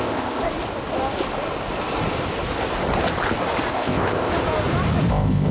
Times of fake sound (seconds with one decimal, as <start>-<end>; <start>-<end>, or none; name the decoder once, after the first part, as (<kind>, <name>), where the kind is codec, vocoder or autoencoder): 0.0-0.4 (codec, ZipCodec); 3.7-4.3; 5.1-5.5

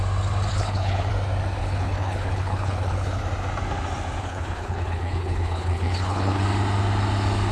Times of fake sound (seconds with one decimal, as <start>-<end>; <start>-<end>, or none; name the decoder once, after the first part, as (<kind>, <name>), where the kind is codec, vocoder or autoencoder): 0.5-1.1 (codec, HILCodec); 1.6-3.2; 4.2-6.4